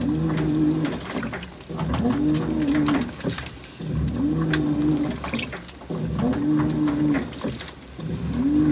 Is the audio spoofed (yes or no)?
no